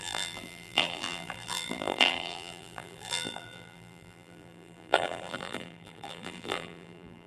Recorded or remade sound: remade